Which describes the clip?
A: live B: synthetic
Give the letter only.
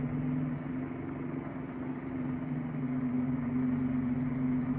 A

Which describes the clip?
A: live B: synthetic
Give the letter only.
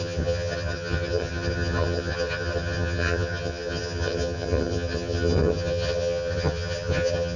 B